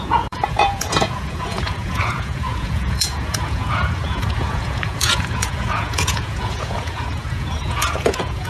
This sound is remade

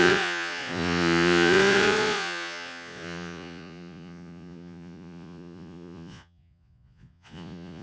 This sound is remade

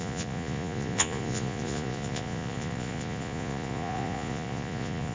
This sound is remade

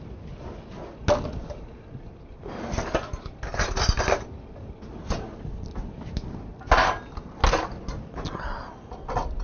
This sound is recorded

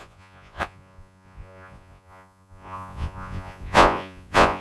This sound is remade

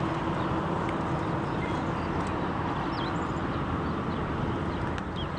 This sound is recorded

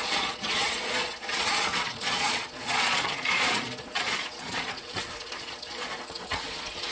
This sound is remade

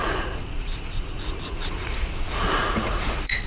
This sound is remade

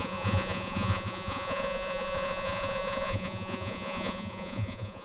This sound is remade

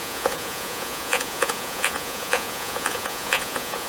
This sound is remade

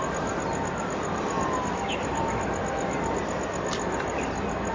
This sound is recorded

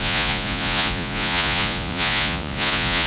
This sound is remade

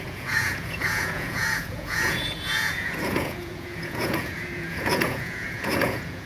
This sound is remade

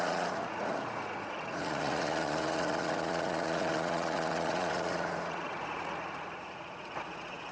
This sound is remade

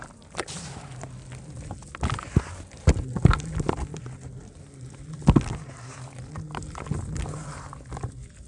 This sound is recorded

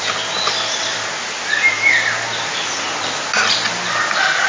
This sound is recorded